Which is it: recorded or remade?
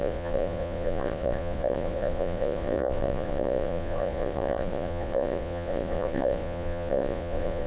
remade